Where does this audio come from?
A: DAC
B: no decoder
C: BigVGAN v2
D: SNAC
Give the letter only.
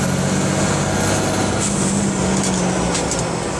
B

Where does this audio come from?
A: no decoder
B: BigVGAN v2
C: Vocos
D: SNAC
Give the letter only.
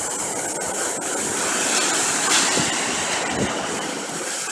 A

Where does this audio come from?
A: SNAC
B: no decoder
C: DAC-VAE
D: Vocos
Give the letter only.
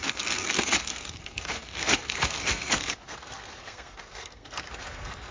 A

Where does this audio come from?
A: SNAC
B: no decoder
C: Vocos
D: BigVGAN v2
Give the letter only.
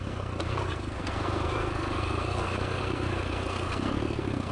A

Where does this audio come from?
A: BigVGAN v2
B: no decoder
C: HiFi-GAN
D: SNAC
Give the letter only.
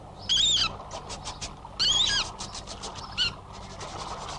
B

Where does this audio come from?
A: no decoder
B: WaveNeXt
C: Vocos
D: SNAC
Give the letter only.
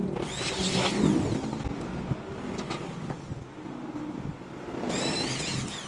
A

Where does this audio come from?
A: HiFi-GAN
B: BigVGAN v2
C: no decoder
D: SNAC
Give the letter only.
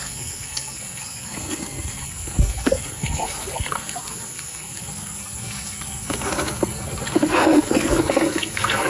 D